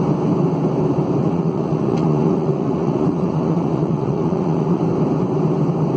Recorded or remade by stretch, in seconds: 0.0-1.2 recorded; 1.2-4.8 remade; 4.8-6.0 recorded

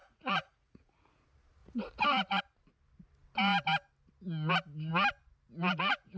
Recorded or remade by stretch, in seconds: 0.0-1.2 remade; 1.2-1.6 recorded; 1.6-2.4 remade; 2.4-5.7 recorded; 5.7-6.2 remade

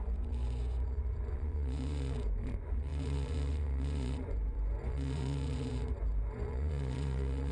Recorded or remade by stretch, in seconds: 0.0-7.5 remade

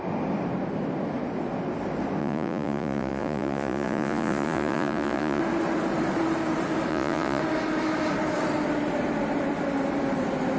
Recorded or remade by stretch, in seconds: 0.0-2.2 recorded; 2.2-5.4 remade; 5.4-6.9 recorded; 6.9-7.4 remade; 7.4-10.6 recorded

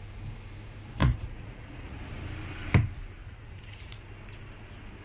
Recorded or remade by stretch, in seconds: 0.0-1.0 recorded; 1.0-2.0 remade; 2.0-3.2 recorded; 3.2-4.1 remade; 4.1-5.0 recorded

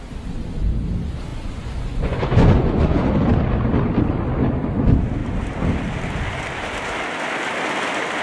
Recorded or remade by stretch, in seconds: 0.0-1.3 recorded; 1.3-3.1 remade; 3.1-8.2 recorded

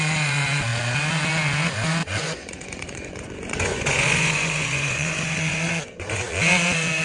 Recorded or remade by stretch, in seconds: 0.0-2.0 recorded; 2.0-6.2 remade; 6.2-7.0 recorded

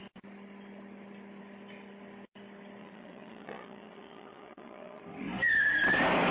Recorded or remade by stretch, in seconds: 0.0-2.8 recorded; 2.8-5.0 remade; 5.0-6.3 recorded